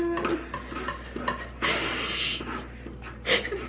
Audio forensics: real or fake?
real